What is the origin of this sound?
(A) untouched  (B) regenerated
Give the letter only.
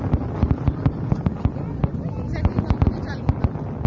A